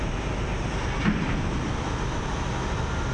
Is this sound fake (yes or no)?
no